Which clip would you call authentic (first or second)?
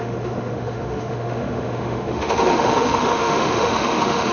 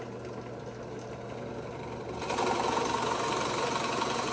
second